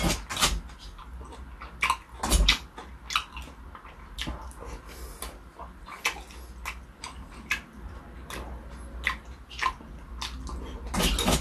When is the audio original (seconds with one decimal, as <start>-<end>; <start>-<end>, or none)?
0.0-11.4